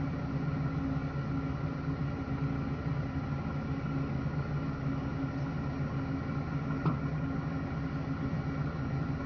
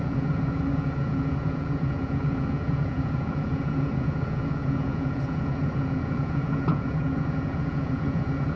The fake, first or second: second